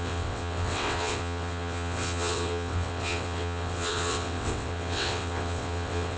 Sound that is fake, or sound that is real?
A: fake